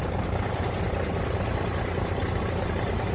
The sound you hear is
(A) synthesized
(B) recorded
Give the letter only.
B